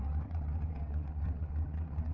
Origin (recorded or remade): remade